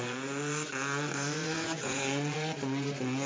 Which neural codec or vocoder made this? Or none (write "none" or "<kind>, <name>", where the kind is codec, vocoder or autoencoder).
vocoder, Vocos